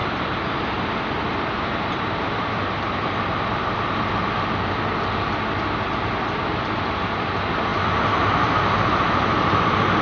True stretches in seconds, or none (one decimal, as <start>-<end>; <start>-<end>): 0.0-10.0